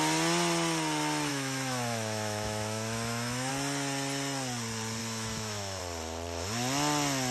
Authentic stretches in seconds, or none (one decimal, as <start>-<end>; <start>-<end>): 0.0-1.3; 3.5-5.0; 5.8-7.3